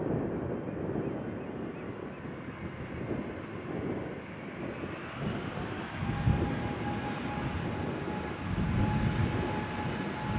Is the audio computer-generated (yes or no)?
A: no